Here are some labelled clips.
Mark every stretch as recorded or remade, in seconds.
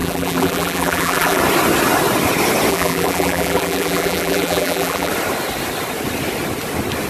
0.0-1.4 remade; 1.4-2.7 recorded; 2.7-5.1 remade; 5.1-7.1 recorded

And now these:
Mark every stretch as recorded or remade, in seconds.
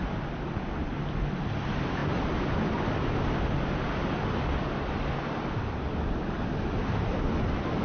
0.0-7.8 recorded